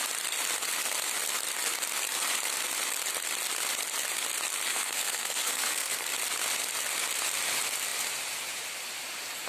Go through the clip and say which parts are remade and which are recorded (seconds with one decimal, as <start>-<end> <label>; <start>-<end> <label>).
0.0-4.7 recorded; 4.7-6.1 remade; 6.1-9.5 recorded